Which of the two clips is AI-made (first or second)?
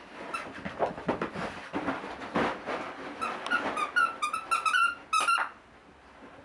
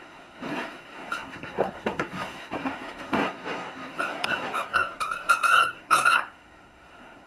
second